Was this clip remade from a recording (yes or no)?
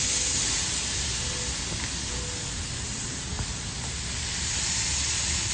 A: no